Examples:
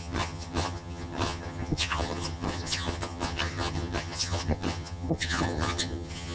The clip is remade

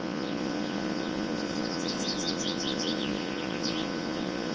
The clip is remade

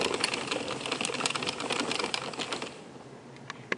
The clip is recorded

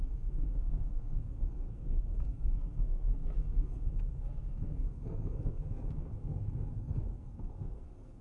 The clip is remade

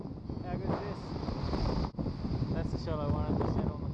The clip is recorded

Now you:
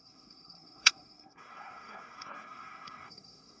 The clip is remade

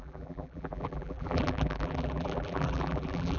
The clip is remade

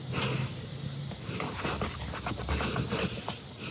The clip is recorded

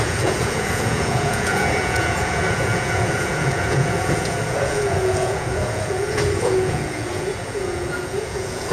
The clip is remade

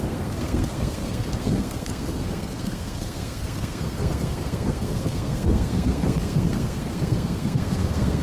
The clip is remade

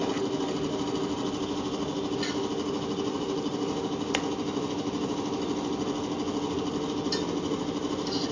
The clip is recorded